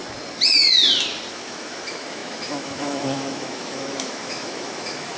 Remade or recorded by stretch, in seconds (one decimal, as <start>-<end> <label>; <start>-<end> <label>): 0.0-1.3 recorded; 1.3-5.2 remade